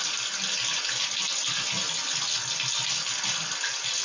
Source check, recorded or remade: recorded